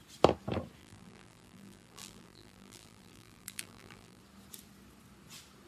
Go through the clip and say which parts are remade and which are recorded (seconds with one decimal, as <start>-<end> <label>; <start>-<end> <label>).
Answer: 0.0-0.8 recorded; 0.8-4.2 remade; 4.2-5.7 recorded